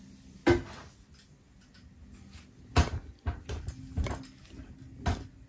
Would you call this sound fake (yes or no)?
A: no